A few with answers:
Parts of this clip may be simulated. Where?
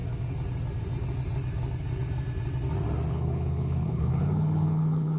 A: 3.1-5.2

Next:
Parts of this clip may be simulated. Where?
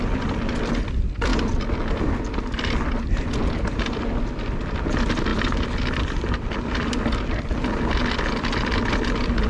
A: none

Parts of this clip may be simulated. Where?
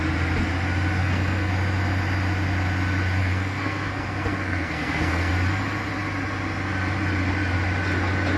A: 1.0-1.5; 3.2-5.3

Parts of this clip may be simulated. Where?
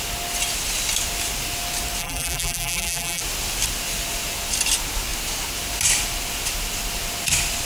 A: 2.0-3.2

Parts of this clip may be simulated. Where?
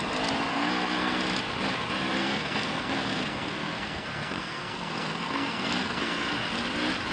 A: 0.5-1.2; 2.2-6.5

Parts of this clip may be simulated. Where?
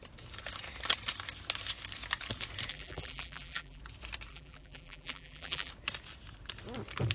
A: 2.7-3.8; 4.3-5.7